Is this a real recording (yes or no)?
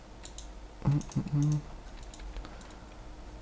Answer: yes